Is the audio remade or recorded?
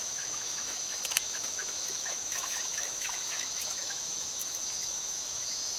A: remade